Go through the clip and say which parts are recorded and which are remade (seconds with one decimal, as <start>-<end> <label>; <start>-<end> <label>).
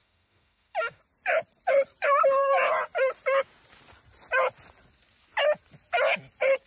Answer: 0.0-1.0 remade; 1.0-6.7 recorded